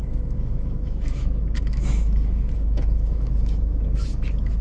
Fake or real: fake